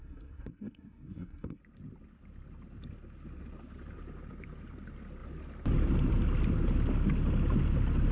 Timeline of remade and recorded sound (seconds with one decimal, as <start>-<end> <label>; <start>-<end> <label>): 0.0-1.6 remade; 1.6-8.1 recorded